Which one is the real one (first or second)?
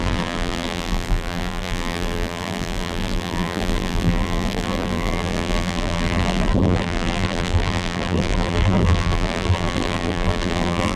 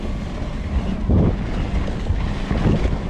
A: second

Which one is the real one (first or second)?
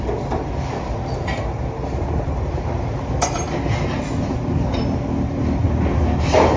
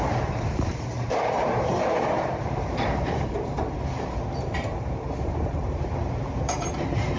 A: first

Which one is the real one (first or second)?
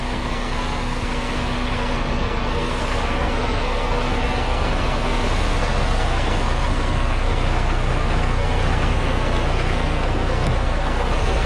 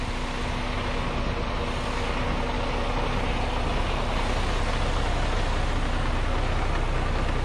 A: second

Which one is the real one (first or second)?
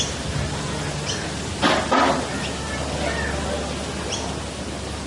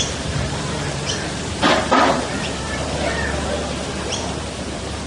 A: first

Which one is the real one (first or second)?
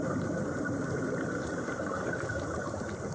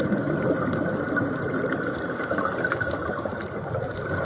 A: second